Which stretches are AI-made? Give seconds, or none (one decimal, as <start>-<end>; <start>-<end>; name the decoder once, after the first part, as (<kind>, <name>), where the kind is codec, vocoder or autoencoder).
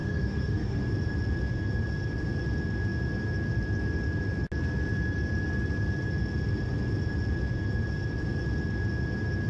0.0-0.8 (autoencoder, DAC-VAE)